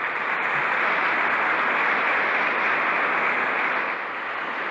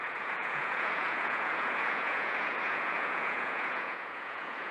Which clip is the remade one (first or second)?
second